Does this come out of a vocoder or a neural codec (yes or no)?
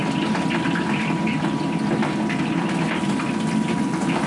no